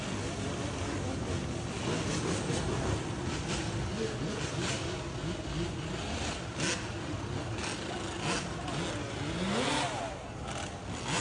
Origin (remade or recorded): recorded